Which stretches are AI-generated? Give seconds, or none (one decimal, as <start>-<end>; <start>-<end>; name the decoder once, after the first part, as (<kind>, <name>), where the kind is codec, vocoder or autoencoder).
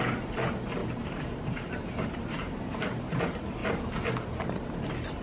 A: 0.8-3.2 (vocoder, BigVGAN v2); 3.6-4.1